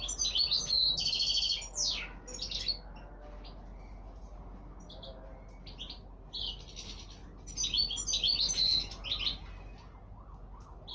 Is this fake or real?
real